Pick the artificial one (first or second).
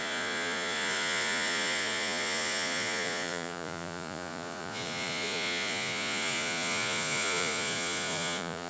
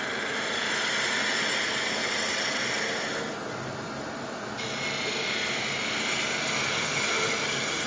first